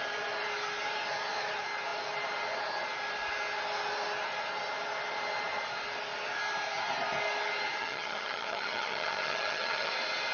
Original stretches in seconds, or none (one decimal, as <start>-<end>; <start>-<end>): 0.0-7.8; 9.9-10.3